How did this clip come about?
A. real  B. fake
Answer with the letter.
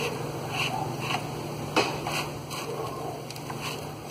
A